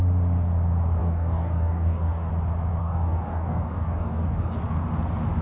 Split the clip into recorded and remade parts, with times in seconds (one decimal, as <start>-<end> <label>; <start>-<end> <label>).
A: 0.0-1.0 recorded; 1.0-2.3 remade; 2.3-2.8 recorded; 2.8-4.6 remade; 4.6-5.4 recorded